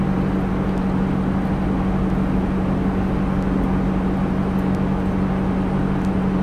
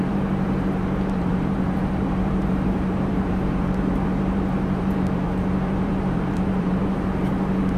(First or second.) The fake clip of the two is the second